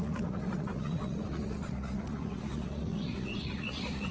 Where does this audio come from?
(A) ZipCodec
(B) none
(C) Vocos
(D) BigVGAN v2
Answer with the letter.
C